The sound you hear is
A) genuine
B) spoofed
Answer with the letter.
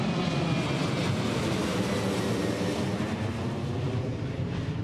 A